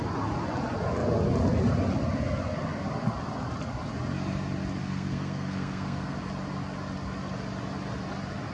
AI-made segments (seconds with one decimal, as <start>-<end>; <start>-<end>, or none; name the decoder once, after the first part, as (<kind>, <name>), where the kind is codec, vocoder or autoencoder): 4.8-6.3 (codec, SNAC)